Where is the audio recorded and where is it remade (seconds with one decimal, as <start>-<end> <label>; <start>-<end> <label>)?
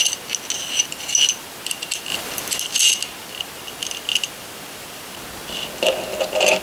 0.0-6.6 recorded